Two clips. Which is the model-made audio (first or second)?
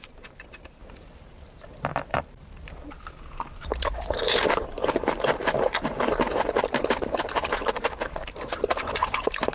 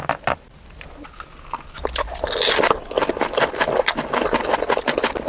first